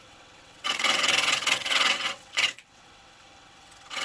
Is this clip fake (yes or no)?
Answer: yes